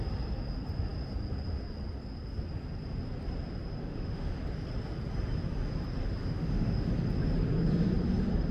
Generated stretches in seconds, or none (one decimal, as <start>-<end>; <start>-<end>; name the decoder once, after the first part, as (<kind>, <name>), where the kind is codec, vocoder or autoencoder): 3.8-4.3 (autoencoder, DAC-VAE); 6.2-6.9